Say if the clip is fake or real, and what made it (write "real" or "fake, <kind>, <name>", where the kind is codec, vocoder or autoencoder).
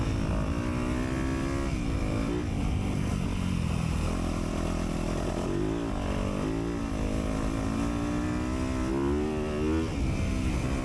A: real